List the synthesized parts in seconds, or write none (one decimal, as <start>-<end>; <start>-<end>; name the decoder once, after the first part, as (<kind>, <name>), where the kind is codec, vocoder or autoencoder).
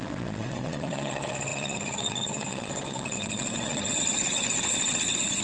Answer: 0.0-5.4 (vocoder, WaveNeXt)